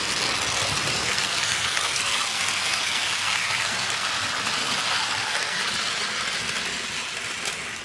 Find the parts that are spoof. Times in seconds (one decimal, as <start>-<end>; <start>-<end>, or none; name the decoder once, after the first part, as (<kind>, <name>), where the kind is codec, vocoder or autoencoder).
1.0-4.1 (codec, SNAC); 4.6-5.6